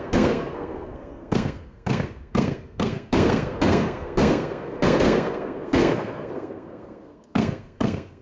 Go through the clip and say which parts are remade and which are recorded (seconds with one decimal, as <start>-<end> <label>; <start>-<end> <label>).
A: 0.0-8.2 remade